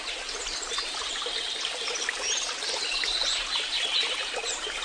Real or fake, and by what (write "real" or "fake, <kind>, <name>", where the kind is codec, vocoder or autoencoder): real